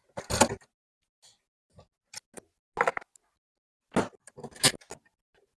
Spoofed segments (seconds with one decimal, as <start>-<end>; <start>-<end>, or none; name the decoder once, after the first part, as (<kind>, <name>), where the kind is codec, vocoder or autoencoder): none